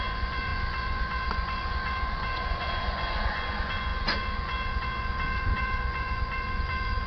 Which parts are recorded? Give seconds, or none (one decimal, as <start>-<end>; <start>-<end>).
none